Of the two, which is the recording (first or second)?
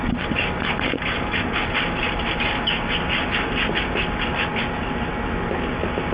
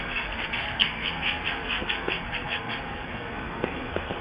first